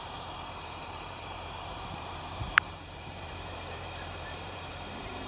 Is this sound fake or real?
fake